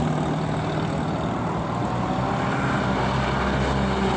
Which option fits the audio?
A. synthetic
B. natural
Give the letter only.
B